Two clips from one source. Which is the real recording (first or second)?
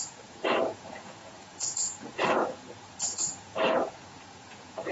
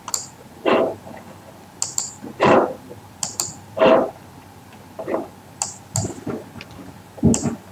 second